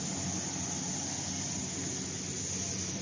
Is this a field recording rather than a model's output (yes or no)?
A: yes